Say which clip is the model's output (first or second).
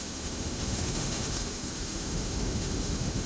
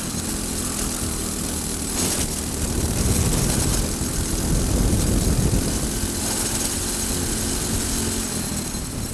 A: first